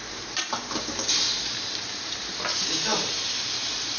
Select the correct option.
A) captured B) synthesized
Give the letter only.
B